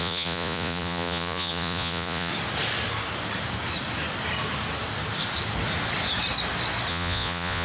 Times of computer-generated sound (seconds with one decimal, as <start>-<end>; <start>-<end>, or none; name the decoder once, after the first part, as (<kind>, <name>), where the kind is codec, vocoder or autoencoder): 0.0-2.3 (vocoder, Vocos); 6.9-7.6